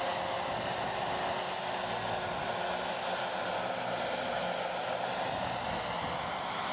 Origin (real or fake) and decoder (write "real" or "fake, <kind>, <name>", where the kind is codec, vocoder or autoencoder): real